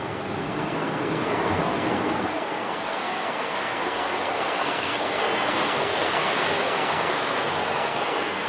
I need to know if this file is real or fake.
fake